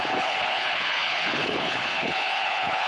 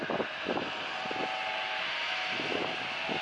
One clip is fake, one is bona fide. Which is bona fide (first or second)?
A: second